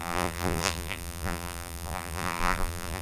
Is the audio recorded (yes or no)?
no